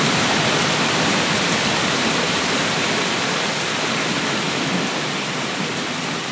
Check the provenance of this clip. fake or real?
fake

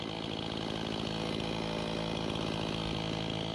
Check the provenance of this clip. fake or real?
real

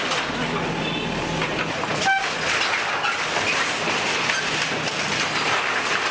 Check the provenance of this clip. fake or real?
real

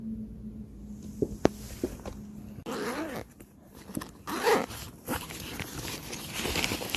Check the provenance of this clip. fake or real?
real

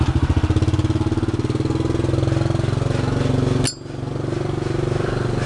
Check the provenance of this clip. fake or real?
real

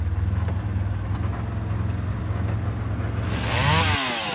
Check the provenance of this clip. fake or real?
real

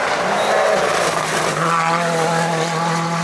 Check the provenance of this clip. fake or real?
real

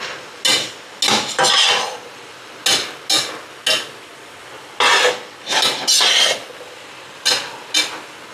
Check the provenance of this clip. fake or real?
real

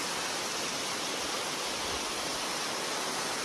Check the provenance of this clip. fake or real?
real